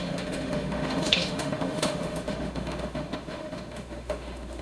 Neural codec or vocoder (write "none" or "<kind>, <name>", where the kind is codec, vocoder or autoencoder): autoencoder, DAC-VAE